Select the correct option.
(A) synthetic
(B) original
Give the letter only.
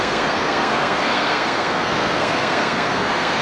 A